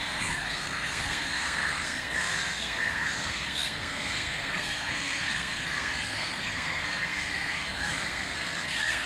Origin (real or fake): fake